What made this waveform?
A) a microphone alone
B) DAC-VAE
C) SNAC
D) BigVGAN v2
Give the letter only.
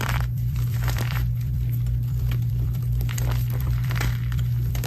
D